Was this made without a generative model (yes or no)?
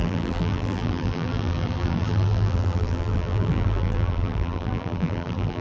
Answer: no